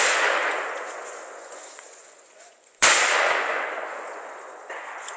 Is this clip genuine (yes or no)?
no